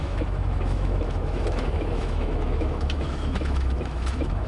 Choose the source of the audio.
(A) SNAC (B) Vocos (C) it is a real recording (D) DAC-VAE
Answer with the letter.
D